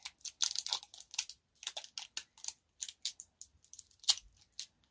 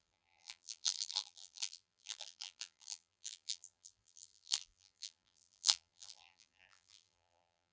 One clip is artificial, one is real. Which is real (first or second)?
first